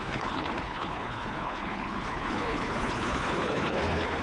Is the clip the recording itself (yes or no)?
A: no